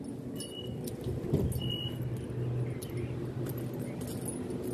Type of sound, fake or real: real